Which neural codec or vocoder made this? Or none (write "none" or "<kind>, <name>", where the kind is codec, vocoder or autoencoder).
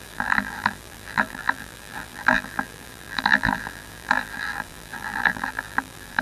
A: vocoder, BigVGAN v2